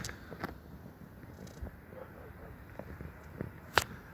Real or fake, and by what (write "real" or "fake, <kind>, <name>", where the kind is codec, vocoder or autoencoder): real